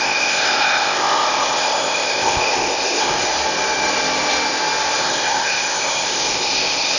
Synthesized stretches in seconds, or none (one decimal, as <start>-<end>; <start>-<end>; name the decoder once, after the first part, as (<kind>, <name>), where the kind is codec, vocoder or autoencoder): 0.0-3.3 (codec, ZipCodec); 5.0-7.0